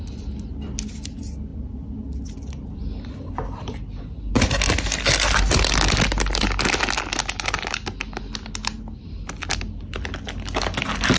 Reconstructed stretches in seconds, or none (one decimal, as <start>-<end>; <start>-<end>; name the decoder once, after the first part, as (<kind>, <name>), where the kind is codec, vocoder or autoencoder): none